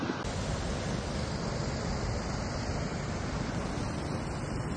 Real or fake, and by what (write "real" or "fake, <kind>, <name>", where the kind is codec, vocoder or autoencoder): real